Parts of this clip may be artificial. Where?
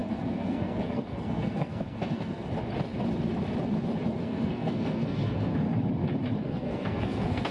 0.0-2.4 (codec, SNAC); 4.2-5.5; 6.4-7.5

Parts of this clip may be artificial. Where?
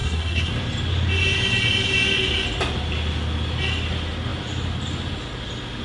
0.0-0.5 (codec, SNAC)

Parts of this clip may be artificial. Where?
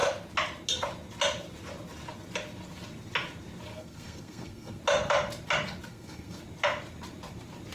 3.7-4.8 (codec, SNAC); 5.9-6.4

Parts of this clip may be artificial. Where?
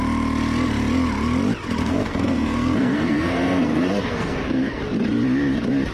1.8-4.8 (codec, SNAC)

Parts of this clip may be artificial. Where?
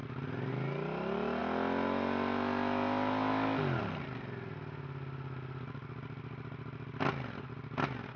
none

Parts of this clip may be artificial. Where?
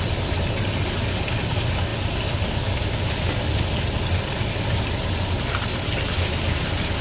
none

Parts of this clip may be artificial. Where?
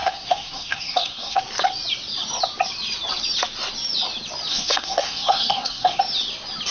0.0-1.4 (codec, SNAC); 4.5-6.0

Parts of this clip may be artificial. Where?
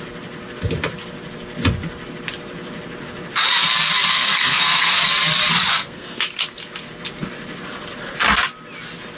4.1-5.1 (codec, SNAC); 5.7-6.2